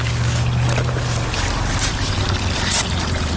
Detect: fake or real real